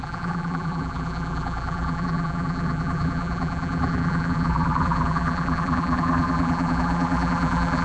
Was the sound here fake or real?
fake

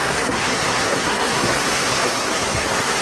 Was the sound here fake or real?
fake